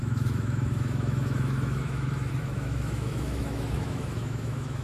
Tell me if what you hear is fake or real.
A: fake